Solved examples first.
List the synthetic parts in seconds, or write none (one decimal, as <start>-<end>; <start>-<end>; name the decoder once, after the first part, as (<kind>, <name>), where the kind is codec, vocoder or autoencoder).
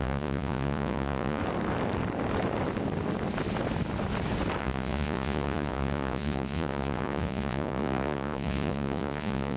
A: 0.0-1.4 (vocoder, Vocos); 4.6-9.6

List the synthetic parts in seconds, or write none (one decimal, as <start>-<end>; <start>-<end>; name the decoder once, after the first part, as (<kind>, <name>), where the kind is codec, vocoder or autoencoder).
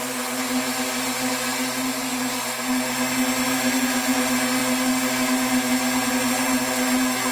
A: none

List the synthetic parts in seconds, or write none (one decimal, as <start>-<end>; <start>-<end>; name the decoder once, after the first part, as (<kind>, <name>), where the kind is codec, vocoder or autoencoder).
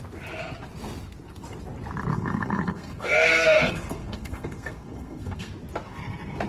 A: 2.1-5.5 (codec, SNAC)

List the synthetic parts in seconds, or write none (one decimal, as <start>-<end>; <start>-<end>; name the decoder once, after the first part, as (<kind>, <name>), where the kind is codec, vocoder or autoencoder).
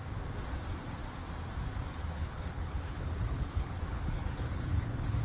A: 2.0-5.2 (codec, HILCodec)